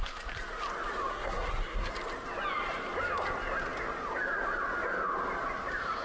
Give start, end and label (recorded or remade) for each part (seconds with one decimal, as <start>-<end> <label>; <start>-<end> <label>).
0.0-1.1 recorded; 1.1-1.9 remade; 1.9-6.0 recorded

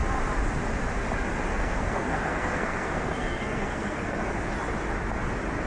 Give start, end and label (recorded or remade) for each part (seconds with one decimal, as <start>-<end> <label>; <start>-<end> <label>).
0.0-1.5 recorded; 1.5-4.3 remade; 4.3-5.7 recorded

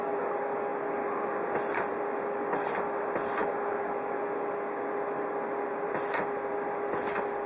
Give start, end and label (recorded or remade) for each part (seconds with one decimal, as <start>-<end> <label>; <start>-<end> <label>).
0.0-7.5 recorded

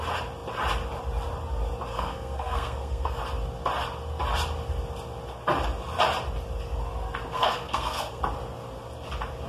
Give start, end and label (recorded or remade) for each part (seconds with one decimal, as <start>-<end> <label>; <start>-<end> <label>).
0.0-1.9 recorded; 1.9-3.2 remade; 3.2-7.3 recorded; 7.3-8.2 remade; 8.2-9.5 recorded

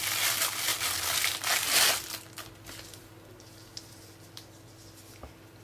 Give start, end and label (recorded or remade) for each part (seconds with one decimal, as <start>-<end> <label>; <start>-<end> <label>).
0.0-5.6 recorded